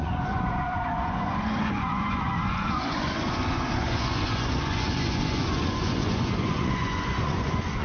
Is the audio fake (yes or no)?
yes